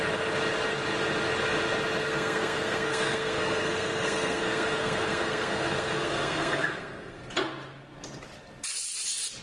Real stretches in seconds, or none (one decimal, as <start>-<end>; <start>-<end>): 0.0-2.0; 7.2-9.4